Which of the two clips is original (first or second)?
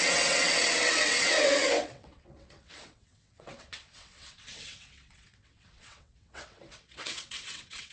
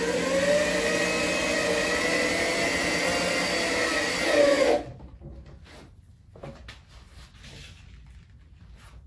second